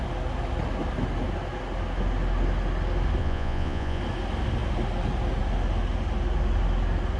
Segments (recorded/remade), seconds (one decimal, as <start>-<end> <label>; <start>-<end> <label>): 0.0-3.2 recorded; 3.2-4.0 remade; 4.0-7.2 recorded